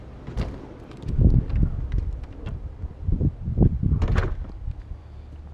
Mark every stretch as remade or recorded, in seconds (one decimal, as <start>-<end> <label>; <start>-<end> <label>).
0.0-0.8 remade; 0.8-1.7 recorded; 1.7-5.0 remade; 5.0-5.5 recorded